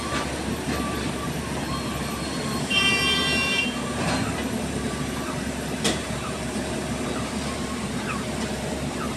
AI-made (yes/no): yes